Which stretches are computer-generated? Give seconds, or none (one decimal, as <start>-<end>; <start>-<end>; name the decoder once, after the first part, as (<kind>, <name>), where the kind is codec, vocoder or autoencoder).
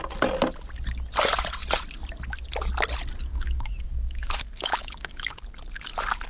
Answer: 3.3-5.4 (autoencoder, DAC-VAE)